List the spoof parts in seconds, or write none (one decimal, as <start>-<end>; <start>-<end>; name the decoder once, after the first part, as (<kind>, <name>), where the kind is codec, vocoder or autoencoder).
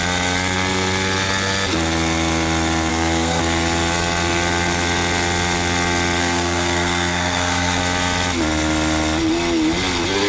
2.9-3.4 (codec, SNAC); 6.2-7.8